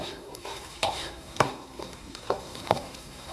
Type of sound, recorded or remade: remade